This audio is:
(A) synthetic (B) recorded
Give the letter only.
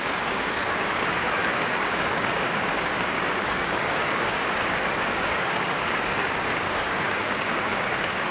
A